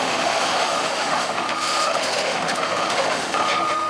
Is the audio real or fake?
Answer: fake